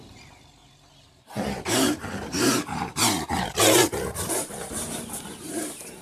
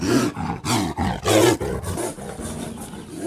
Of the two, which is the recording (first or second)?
second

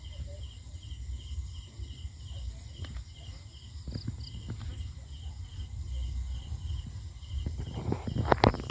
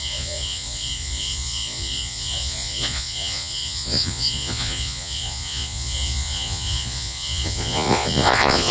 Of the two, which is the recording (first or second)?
first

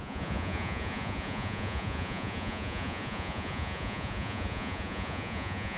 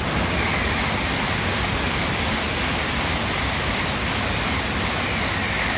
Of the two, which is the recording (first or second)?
second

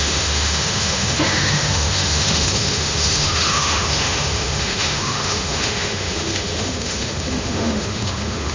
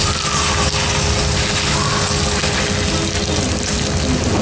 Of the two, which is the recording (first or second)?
second